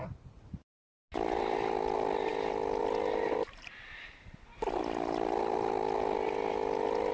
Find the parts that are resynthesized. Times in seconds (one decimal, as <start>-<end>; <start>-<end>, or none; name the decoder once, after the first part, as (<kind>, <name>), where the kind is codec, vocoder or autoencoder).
none